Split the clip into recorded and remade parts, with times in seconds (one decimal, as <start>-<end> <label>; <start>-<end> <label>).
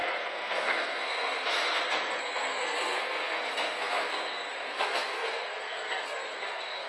0.0-6.9 remade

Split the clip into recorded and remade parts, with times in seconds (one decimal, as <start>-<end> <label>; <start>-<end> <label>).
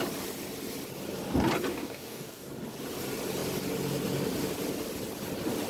0.0-1.7 recorded; 1.7-2.5 remade; 2.5-5.7 recorded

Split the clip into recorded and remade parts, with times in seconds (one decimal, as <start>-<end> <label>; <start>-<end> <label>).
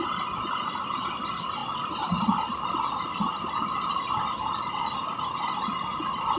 0.0-6.4 recorded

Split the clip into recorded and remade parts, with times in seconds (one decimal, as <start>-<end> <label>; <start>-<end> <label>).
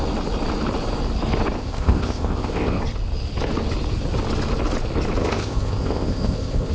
0.0-1.6 recorded; 1.6-2.8 remade; 2.8-5.2 recorded; 5.2-6.7 remade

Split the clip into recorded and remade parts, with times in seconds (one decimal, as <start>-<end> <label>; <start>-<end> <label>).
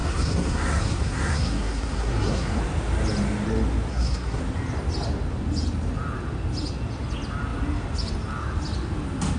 0.0-2.6 remade; 2.6-3.9 recorded; 3.9-4.4 remade; 4.4-9.4 recorded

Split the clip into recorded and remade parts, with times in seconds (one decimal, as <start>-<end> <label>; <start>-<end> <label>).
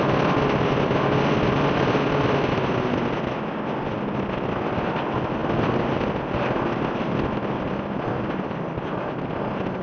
0.0-9.8 recorded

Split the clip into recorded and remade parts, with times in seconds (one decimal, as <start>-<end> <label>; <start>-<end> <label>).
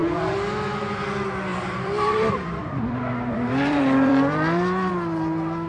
0.0-1.5 recorded; 1.5-4.9 remade; 4.9-5.7 recorded